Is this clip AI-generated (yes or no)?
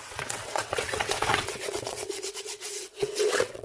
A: yes